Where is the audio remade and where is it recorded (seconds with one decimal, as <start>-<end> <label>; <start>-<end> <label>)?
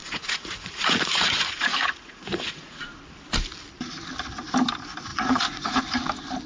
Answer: 0.0-3.0 remade; 3.0-5.1 recorded; 5.1-5.8 remade; 5.8-6.5 recorded